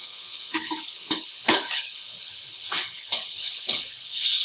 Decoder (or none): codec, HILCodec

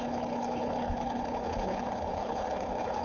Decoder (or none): codec, HILCodec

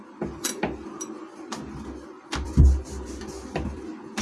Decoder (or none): none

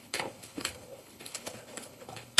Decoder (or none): codec, HILCodec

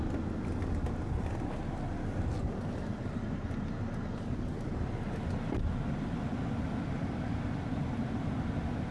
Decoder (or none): none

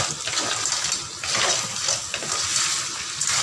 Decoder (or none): none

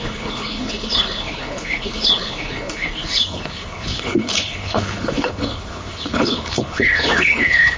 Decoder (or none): codec, HILCodec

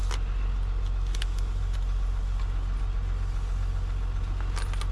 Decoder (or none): none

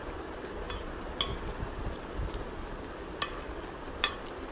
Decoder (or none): none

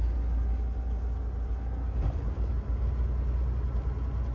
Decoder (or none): none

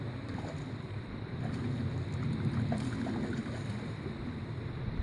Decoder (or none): none